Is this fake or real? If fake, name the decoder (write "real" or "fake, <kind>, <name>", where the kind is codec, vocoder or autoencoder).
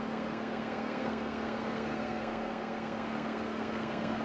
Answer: fake, codec, SNAC